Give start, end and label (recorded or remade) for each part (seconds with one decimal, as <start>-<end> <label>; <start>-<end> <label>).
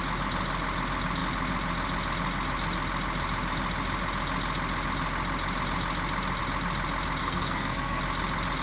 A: 0.0-7.2 recorded; 7.2-8.0 remade; 8.0-8.6 recorded